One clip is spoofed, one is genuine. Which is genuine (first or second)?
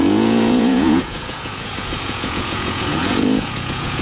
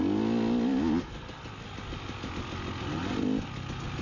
second